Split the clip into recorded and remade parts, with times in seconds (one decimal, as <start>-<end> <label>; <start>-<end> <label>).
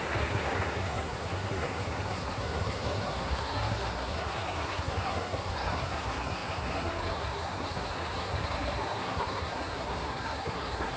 0.0-11.0 remade